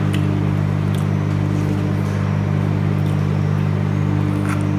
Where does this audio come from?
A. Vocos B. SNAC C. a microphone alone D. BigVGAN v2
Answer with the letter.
C